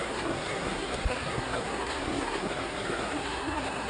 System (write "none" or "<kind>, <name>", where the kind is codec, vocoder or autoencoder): codec, SNAC